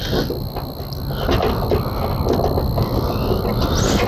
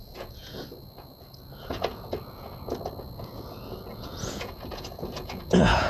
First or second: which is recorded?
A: first